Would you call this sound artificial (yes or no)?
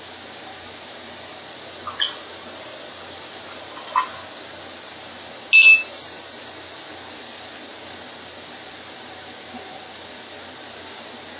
no